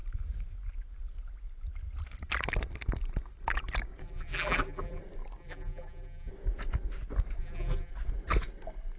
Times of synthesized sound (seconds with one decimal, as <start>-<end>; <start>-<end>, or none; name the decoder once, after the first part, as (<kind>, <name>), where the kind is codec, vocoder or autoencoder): 4.0-5.0 (vocoder, BigVGAN v2); 5.4-6.3; 7.4-7.9